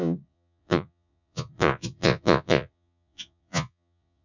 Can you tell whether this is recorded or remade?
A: remade